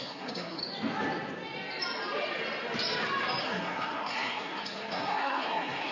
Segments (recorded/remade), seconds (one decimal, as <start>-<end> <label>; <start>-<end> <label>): 0.0-0.6 remade; 0.6-3.4 recorded; 3.4-5.9 remade